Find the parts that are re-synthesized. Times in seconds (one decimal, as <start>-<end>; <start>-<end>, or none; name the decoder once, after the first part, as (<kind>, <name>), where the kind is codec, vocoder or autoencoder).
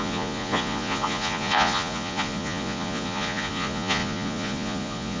0.0-5.2 (vocoder, Vocos)